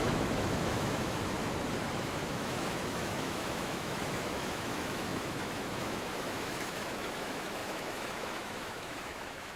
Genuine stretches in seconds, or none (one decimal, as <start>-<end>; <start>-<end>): 1.4-1.9

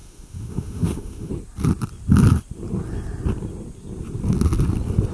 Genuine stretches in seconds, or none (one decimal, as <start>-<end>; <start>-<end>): 1.3-5.1

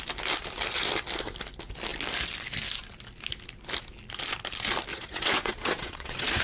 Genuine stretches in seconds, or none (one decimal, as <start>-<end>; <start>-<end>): 0.0-4.9

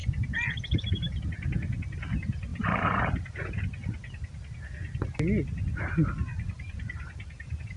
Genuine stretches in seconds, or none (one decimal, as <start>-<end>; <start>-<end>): 0.9-2.5; 3.5-6.3

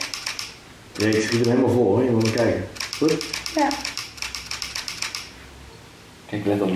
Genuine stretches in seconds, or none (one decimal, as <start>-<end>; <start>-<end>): 0.0-4.0; 4.6-6.8

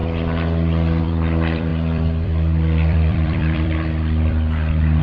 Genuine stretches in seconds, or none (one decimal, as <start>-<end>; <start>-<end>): 0.0-1.0